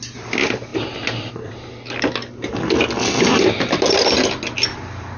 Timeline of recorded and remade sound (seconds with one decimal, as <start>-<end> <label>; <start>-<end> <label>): 0.0-5.2 recorded